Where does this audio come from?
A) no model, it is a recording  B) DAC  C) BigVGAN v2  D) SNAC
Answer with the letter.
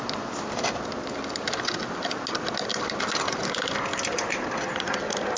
A